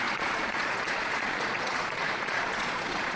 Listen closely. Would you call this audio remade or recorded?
remade